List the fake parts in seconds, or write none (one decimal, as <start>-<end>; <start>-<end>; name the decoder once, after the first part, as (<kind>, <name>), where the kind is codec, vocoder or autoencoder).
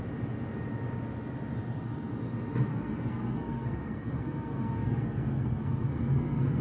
2.7-6.6 (codec, SNAC)